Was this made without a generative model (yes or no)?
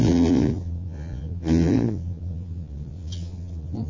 no